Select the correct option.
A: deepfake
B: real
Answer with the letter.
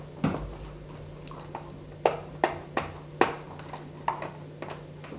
B